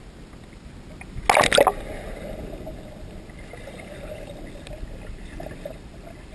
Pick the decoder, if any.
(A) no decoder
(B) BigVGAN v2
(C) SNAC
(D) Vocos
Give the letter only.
A